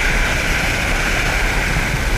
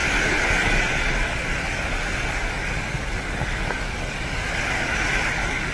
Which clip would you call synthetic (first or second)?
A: second